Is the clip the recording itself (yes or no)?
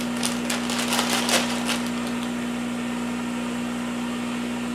yes